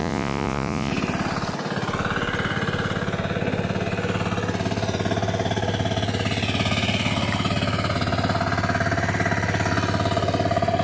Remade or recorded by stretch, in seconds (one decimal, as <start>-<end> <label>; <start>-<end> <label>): 0.0-0.9 remade; 0.9-10.8 recorded